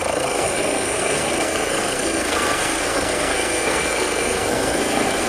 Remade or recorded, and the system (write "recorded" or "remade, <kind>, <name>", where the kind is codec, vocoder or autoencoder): remade, codec, SNAC